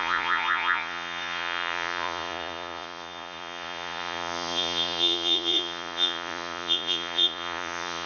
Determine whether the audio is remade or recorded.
remade